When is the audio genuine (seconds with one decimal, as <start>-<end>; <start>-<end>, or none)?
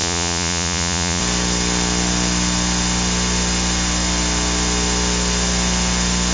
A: 1.2-6.3